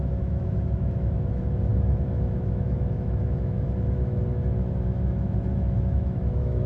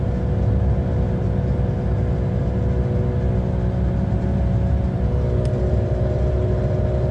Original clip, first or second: second